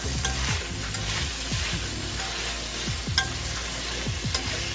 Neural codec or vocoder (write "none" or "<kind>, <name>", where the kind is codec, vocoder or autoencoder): none